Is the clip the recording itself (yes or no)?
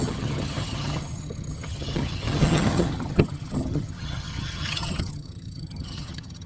no